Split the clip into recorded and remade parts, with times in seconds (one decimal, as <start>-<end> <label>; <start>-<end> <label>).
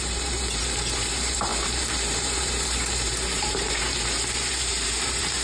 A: 0.0-5.4 remade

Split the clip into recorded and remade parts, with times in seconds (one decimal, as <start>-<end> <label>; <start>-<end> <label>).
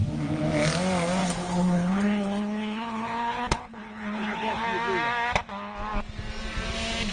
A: 0.0-1.2 recorded; 1.2-4.6 remade; 4.6-7.1 recorded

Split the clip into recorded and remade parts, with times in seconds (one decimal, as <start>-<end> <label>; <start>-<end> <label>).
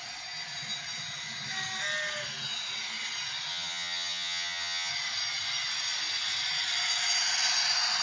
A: 0.0-3.5 recorded; 3.5-4.9 remade; 4.9-8.0 recorded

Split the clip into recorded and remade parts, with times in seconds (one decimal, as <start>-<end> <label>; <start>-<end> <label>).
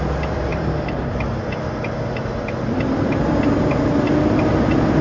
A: 0.0-0.5 recorded; 0.5-3.2 remade; 3.2-5.0 recorded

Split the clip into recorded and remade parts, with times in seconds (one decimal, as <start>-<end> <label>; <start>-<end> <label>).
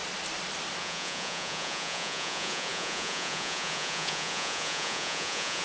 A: 0.0-0.8 recorded; 0.8-5.6 remade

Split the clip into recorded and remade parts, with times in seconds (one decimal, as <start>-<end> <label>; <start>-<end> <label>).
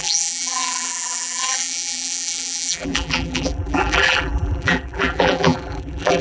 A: 0.0-6.2 remade